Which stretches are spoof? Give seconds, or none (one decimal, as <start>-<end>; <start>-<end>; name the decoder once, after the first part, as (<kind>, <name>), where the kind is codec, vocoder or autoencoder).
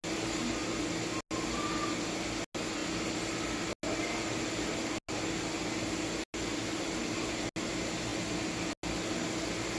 none